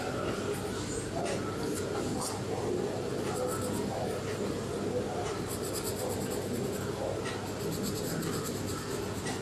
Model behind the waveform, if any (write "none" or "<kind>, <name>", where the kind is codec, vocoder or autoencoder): none